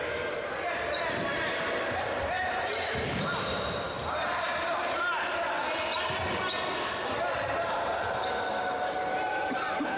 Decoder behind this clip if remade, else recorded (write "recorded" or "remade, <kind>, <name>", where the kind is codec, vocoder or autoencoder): recorded